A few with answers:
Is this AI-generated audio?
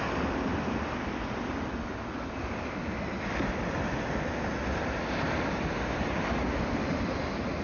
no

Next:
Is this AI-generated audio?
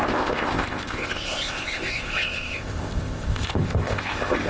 yes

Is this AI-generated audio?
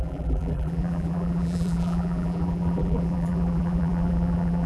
yes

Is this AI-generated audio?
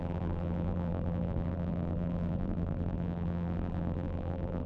yes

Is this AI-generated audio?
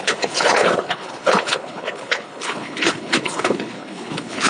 yes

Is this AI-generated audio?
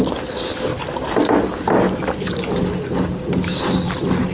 no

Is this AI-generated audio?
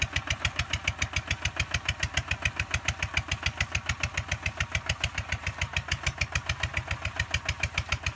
no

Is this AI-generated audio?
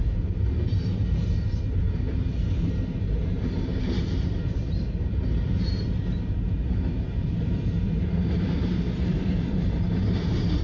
yes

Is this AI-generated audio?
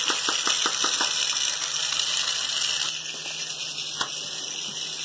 no